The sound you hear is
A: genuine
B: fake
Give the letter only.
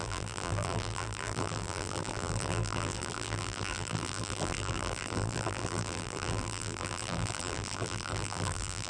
B